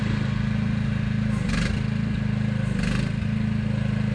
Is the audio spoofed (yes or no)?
no